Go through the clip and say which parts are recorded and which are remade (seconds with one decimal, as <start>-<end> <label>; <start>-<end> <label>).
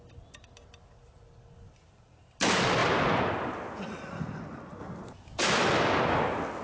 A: 0.0-6.6 recorded